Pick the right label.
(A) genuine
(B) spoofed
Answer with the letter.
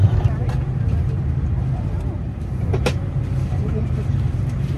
B